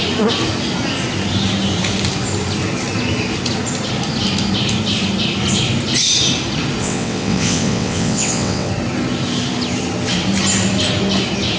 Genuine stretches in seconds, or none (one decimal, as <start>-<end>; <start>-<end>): 0.0-6.8; 8.7-11.6